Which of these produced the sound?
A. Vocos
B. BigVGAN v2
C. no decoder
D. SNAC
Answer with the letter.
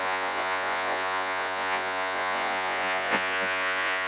A